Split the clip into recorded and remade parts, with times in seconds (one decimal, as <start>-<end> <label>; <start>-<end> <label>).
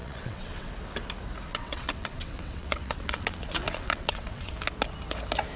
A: 0.0-0.7 remade; 0.7-1.5 recorded; 1.5-4.5 remade; 4.5-5.6 recorded